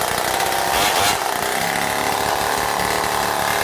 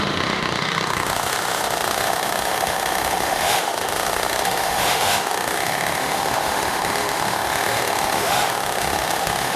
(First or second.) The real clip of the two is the first